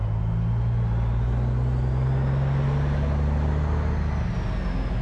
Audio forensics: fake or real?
real